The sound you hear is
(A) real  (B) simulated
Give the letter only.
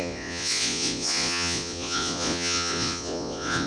B